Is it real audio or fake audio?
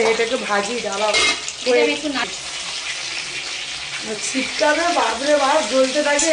real